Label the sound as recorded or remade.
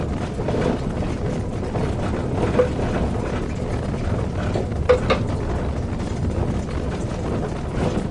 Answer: recorded